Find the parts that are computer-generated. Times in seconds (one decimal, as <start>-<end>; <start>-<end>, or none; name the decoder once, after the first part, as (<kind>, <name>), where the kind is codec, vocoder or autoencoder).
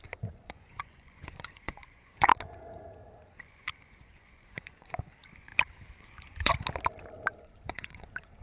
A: 0.0-2.3 (vocoder, Vocos); 3.4-5.5; 6.0-6.5; 7.4-8.4